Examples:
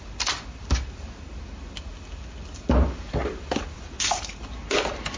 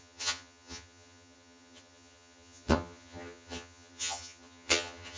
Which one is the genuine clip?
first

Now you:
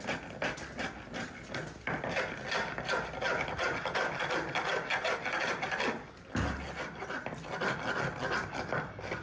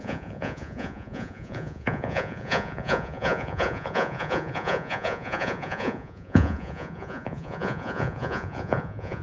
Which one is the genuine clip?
first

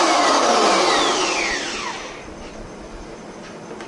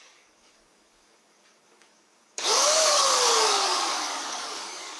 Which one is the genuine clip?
first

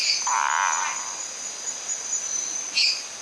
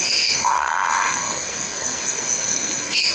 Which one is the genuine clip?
first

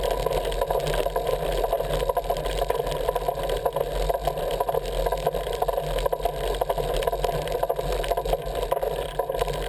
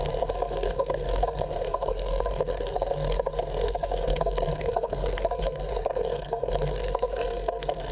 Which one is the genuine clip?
first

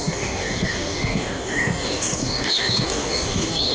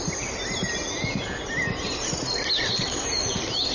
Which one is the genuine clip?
second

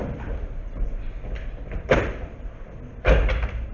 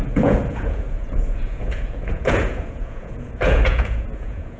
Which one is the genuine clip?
first